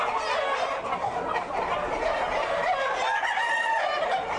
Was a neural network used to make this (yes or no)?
no